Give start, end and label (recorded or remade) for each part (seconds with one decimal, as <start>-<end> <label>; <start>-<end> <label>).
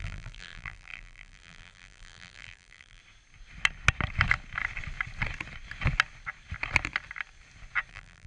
0.0-3.0 remade; 3.0-7.9 recorded; 7.9-8.3 remade